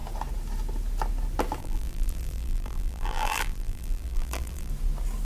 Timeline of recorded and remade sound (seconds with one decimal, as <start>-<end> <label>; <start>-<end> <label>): 0.0-1.6 recorded; 1.6-4.7 remade; 4.7-5.2 recorded